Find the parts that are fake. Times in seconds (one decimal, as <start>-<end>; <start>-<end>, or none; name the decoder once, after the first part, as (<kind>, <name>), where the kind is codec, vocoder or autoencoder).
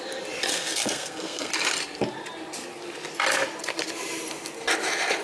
0.5-1.5 (codec, SNAC)